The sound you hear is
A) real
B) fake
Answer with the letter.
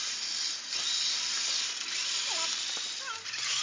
A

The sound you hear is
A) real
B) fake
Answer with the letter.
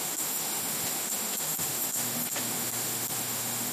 B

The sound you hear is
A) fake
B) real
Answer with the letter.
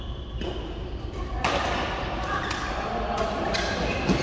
B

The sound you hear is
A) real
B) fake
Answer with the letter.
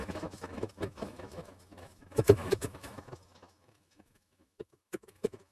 B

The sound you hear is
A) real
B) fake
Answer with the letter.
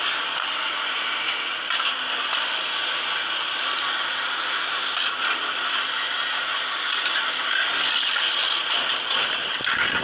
A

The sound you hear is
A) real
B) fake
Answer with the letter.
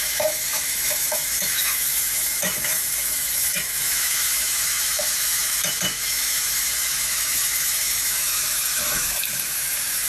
B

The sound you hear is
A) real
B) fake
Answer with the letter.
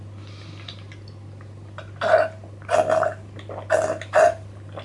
A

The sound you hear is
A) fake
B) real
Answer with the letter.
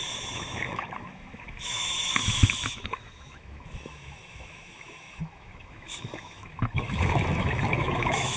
A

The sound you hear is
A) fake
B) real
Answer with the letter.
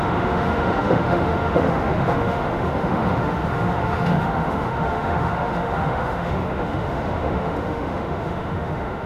A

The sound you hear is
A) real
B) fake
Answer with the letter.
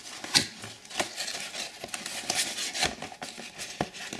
A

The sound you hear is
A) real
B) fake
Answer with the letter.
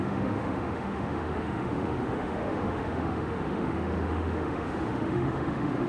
B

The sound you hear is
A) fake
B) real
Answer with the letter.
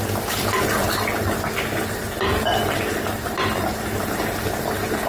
B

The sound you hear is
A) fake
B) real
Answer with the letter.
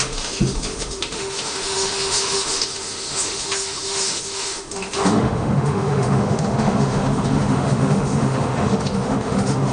A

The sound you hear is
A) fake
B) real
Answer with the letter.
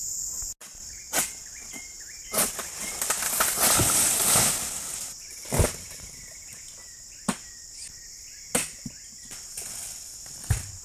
B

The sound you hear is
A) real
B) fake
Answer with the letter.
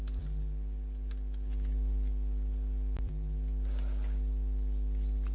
A